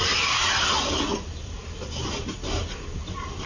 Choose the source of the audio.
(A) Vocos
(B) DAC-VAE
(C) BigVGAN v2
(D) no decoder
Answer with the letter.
D